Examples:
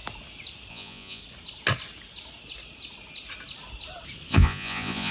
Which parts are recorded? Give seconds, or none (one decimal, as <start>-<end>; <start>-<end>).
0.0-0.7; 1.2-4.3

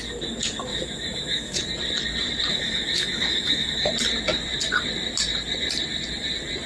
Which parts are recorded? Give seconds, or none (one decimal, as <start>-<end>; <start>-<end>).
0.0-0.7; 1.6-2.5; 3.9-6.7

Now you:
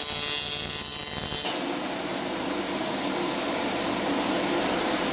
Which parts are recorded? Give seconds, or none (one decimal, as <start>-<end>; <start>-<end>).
0.0-5.1

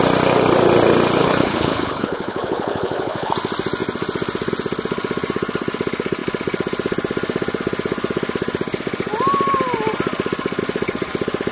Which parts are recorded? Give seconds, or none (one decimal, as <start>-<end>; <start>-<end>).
0.0-1.2; 3.3-11.5

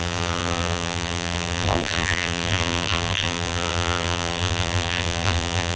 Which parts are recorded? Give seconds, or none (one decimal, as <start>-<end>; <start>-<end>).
none